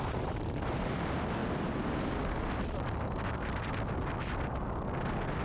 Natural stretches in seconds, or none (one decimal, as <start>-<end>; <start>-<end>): 0.0-5.4